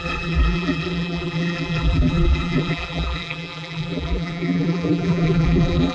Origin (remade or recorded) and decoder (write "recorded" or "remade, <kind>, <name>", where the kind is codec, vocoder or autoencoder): remade, vocoder, BigVGAN v2